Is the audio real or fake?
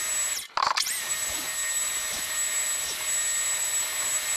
real